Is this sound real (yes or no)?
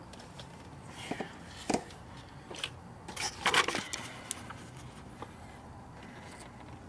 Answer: yes